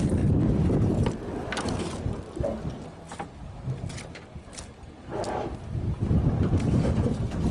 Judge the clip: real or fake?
real